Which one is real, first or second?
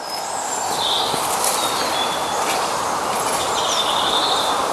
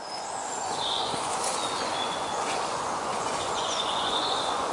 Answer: first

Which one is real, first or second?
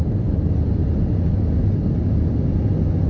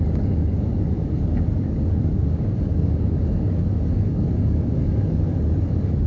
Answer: first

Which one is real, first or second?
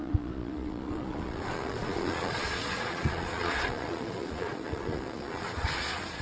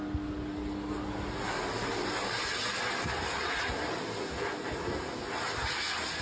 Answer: second